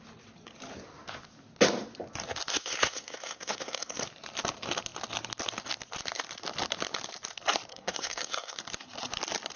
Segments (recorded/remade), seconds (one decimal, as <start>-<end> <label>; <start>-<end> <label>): 0.0-2.5 recorded; 2.5-4.0 remade; 4.0-7.7 recorded; 7.7-8.6 remade; 8.6-9.6 recorded